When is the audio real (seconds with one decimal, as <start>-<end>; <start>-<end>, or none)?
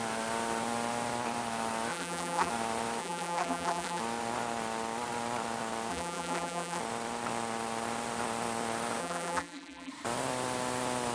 0.0-1.9; 2.5-3.0; 4.0-5.9; 6.8-9.0; 9.9-11.1